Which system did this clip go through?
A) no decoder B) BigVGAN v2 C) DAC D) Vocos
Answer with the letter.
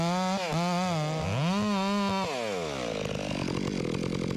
A